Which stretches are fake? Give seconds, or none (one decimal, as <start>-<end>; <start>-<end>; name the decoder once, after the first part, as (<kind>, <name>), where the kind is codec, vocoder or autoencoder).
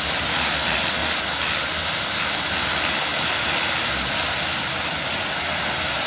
none